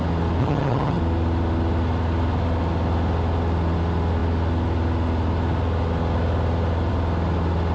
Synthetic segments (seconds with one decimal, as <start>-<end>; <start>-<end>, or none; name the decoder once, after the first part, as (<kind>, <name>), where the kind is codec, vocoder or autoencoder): 0.4-1.0 (vocoder, HiFi-GAN)